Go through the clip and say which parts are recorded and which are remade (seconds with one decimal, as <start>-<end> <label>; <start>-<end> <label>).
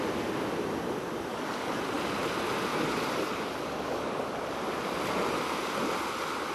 0.0-1.3 recorded; 1.3-1.8 remade; 1.8-2.7 recorded; 2.7-4.3 remade; 4.3-6.5 recorded